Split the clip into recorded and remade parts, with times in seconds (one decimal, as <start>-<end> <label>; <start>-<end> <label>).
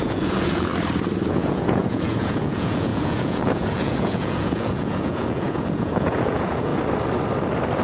0.0-0.7 remade; 0.7-1.3 recorded; 1.3-6.7 remade; 6.7-7.8 recorded